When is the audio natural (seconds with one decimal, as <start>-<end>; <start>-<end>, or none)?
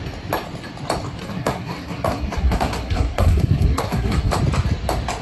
0.0-1.2; 4.3-5.2